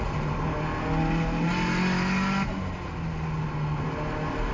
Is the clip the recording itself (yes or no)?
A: yes